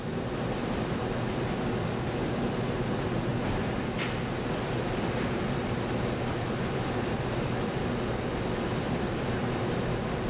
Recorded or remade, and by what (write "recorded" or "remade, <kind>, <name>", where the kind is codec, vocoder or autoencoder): recorded